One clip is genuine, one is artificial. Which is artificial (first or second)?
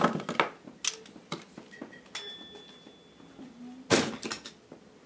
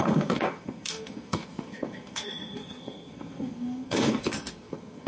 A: second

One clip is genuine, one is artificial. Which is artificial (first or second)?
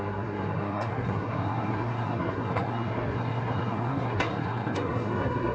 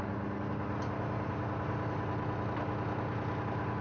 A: first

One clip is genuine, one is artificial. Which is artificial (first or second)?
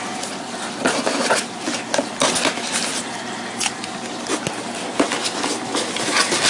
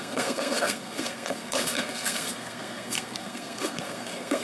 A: second